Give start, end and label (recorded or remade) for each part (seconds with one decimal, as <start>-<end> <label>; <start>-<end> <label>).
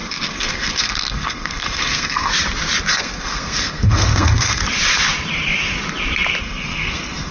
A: 0.0-2.3 remade; 2.3-2.9 recorded; 2.9-4.6 remade; 4.6-6.4 recorded; 6.4-7.3 remade